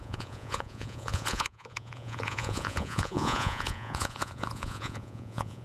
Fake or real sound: fake